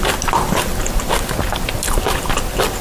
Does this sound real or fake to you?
real